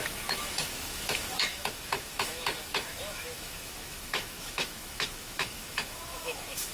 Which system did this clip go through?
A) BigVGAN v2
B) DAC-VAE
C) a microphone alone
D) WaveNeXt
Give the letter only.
B